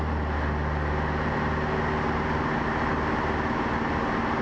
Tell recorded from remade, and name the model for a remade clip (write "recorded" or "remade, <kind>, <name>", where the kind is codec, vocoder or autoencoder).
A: recorded